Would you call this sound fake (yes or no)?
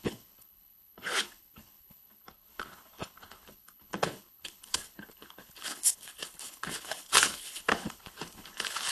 yes